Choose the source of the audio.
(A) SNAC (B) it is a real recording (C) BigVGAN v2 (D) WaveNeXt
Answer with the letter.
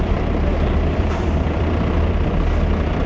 C